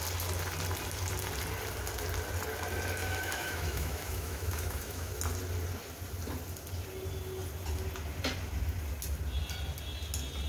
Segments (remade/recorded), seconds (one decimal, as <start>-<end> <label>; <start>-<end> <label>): 0.0-3.0 recorded; 3.0-5.2 remade; 5.2-10.5 recorded